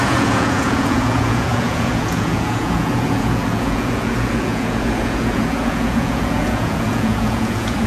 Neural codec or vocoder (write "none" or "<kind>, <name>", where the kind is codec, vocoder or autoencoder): vocoder, Vocos